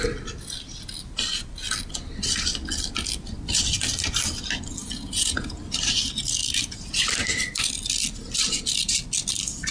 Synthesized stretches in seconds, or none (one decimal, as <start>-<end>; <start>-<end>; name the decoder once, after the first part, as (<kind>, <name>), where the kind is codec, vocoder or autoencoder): 4.8-5.6 (vocoder, Vocos)